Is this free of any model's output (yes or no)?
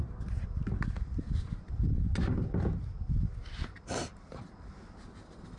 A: yes